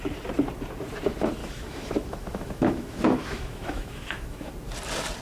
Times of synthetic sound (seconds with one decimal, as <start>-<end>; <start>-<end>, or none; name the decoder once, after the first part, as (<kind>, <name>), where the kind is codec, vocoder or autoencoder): 1.4-4.5 (autoencoder, DAC-VAE)